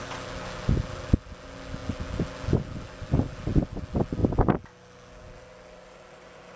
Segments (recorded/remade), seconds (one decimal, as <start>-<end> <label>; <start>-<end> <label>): 0.0-6.6 recorded